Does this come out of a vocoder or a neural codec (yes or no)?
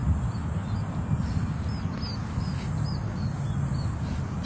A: no